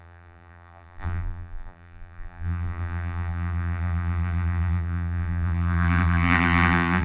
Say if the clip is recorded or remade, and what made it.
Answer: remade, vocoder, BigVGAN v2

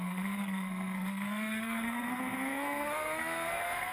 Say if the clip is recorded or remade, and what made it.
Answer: remade, codec, SNAC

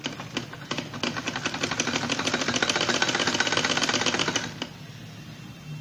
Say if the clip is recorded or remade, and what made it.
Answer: recorded